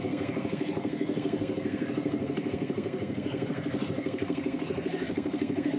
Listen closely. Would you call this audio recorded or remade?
remade